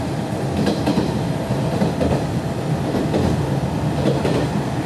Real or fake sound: real